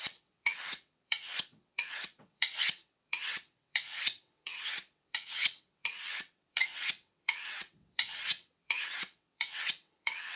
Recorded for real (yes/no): no